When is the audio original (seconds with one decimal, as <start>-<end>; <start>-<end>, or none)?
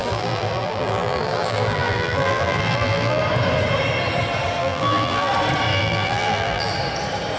3.2-4.6; 5.3-5.7; 6.7-7.4